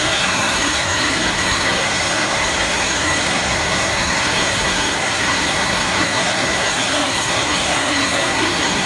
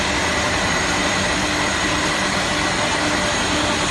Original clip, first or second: second